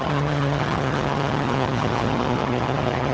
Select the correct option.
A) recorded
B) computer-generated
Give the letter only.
B